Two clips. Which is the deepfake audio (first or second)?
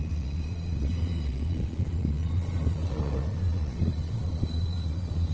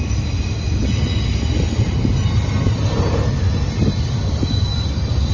first